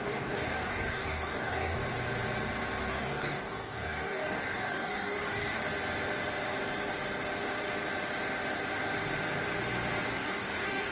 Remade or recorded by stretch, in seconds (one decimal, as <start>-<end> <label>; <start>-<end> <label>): 0.0-1.8 remade; 1.8-2.9 recorded; 2.9-5.6 remade; 5.6-10.1 recorded; 10.1-10.9 remade